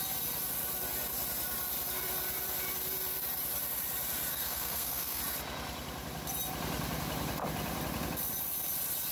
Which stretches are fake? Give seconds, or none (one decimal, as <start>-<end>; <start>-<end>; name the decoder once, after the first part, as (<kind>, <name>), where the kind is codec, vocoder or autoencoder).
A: 4.3-5.2 (codec, SNAC)